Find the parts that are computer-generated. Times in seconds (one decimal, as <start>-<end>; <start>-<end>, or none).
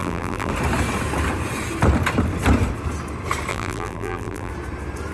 0.0-0.5; 3.5-4.5